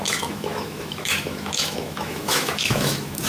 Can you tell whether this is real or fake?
fake